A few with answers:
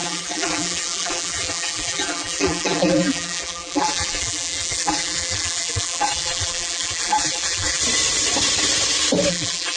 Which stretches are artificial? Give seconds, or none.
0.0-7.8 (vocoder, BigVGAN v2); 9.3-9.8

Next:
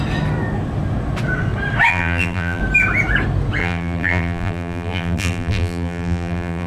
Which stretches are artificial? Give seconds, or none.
1.9-2.6 (vocoder, BigVGAN v2); 3.6-6.7

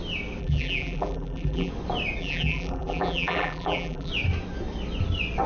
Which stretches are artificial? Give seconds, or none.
0.4-1.7 (vocoder, BigVGAN v2); 2.2-4.1

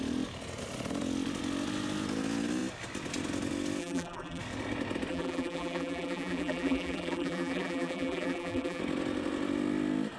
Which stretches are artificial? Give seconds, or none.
3.8-4.4 (vocoder, BigVGAN v2); 5.1-8.8

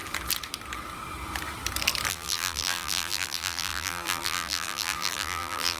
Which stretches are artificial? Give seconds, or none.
2.1-5.8 (vocoder, BigVGAN v2)

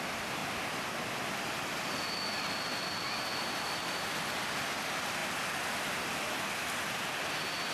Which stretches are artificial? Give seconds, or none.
none